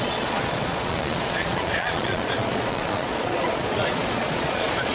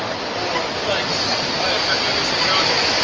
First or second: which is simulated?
first